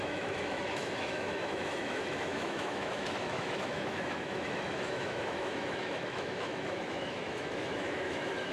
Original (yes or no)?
no